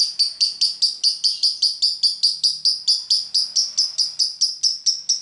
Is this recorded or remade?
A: recorded